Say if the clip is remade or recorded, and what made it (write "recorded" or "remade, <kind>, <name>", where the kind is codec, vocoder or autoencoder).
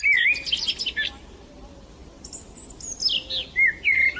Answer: recorded